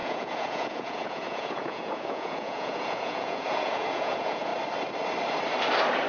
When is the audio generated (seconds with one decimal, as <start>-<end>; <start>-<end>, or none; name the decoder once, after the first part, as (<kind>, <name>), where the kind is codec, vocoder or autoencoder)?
0.0-4.5 (vocoder, Vocos)